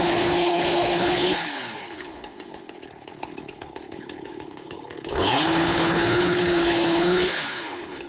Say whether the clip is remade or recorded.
remade